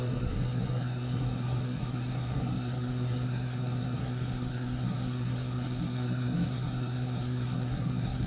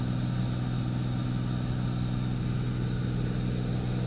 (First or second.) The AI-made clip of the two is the first